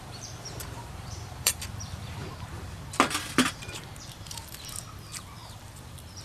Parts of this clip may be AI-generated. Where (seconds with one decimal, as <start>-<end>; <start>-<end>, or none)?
0.0-2.2; 3.8-6.2